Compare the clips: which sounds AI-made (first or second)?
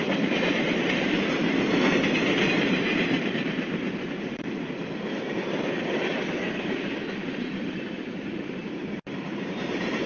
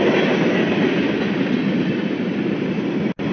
first